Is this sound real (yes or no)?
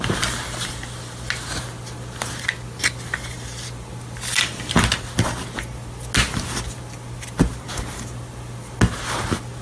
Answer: yes